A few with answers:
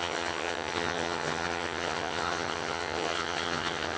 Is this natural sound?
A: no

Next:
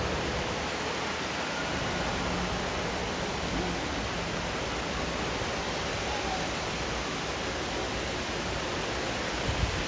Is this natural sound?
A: yes